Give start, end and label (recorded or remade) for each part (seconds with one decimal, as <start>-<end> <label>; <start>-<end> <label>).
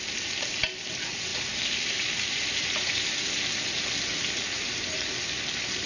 0.0-5.9 recorded